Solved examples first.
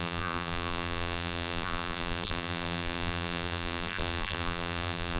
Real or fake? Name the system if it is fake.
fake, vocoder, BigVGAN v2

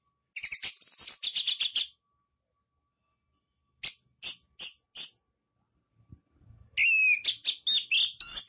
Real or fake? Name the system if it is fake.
real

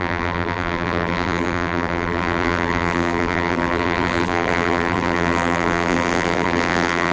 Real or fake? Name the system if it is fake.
fake, vocoder, BigVGAN v2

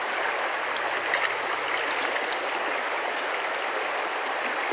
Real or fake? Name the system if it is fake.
real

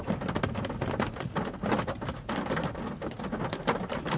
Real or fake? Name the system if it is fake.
real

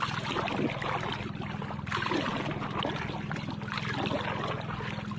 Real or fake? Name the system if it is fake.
real